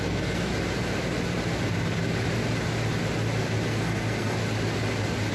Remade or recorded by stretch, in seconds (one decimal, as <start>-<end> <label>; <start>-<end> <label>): 0.0-0.5 remade; 0.5-3.7 recorded; 3.7-4.4 remade; 4.4-5.3 recorded